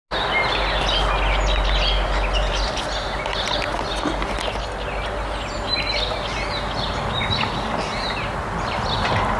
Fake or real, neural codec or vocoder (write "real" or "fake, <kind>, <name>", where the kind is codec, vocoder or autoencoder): real